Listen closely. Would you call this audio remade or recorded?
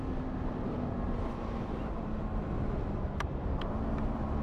recorded